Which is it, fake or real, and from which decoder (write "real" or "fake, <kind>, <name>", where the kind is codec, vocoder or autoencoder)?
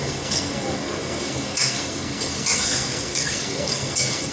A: fake, codec, SNAC